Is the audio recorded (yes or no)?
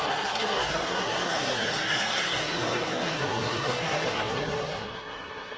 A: no